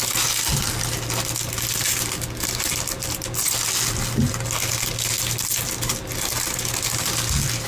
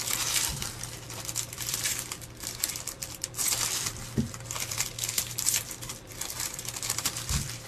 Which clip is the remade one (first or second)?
second